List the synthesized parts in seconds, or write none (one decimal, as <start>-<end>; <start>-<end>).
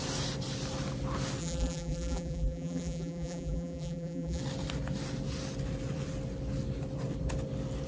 1.4-4.4